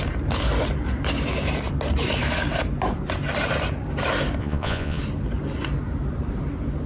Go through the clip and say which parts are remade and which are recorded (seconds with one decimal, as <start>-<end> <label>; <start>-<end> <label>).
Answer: 0.0-4.4 recorded; 4.4-5.0 remade; 5.0-6.9 recorded